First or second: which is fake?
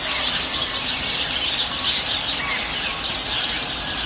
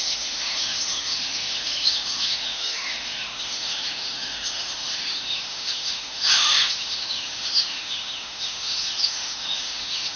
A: second